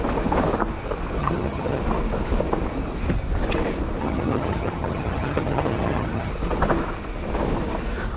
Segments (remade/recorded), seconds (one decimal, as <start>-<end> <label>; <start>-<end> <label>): 0.0-1.2 recorded; 1.2-1.8 remade; 1.8-4.0 recorded; 4.0-6.3 remade; 6.3-8.2 recorded